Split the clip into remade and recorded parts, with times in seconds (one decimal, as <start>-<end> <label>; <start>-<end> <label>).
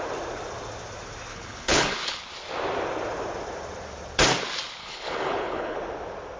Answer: 0.0-1.3 recorded; 1.3-2.2 remade; 2.2-4.8 recorded; 4.8-5.8 remade; 5.8-6.4 recorded